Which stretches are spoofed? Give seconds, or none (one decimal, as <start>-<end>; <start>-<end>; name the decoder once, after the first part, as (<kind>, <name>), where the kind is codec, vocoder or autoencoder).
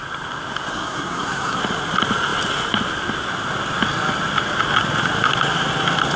0.7-1.6 (codec, SNAC)